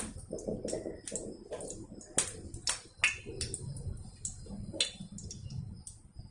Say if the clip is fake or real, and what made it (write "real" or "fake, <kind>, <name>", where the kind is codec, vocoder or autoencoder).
real